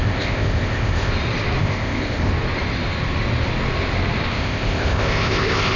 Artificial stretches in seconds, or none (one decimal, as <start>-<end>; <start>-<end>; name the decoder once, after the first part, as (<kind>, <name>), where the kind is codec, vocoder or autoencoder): 0.0-1.1 (codec, ZipCodec); 1.6-2.3; 4.3-5.8